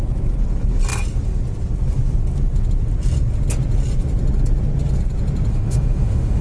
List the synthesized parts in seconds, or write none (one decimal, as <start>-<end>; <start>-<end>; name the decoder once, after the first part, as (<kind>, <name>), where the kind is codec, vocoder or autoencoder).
5.5-6.4 (autoencoder, DAC-VAE)